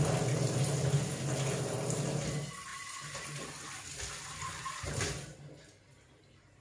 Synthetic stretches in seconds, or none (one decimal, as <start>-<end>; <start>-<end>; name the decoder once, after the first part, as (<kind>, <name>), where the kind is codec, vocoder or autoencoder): none